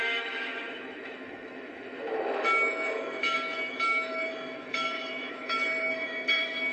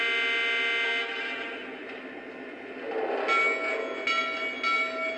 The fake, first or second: first